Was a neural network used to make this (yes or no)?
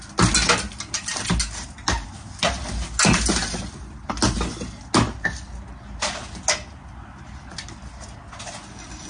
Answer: no